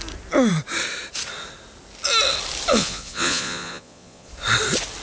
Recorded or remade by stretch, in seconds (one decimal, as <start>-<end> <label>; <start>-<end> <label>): 0.0-2.7 recorded; 2.7-4.3 remade; 4.3-5.0 recorded